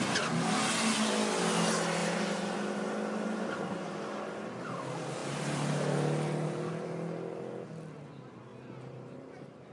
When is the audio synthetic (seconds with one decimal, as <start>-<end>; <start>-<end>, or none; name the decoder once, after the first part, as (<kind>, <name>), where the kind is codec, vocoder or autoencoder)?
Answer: 8.5-9.7 (vocoder, BigVGAN v2)